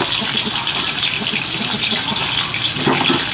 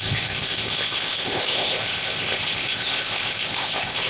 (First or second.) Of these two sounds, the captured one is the first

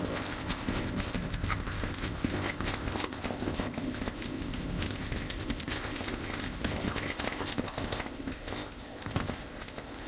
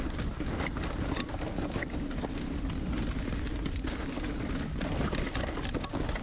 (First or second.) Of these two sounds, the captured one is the second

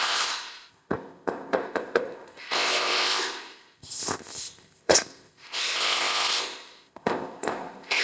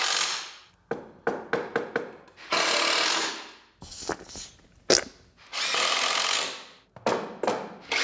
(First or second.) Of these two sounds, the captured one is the second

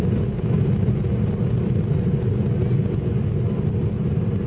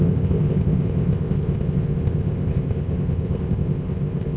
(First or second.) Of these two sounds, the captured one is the first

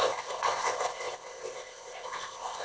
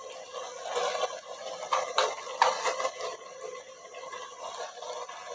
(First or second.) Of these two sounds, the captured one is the second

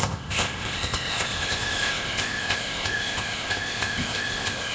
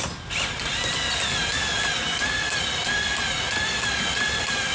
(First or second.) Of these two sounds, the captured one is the second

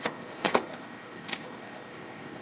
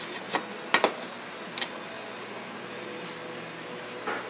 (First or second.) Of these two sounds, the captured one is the second